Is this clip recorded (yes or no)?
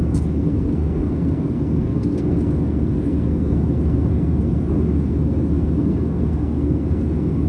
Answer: no